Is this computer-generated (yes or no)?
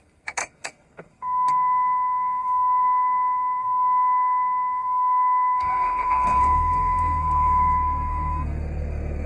yes